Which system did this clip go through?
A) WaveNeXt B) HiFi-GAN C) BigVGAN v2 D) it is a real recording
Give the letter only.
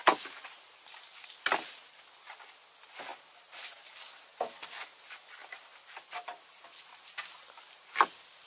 D